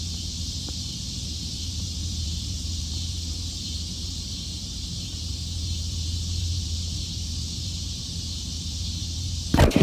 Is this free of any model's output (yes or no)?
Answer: no